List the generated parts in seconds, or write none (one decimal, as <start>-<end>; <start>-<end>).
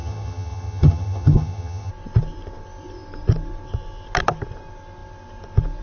0.0-1.9